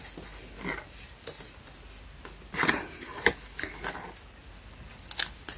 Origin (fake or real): real